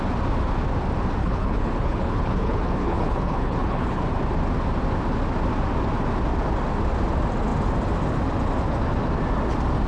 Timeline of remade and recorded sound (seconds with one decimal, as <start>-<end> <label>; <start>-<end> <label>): 0.0-1.2 recorded; 1.2-4.0 remade; 4.0-9.9 recorded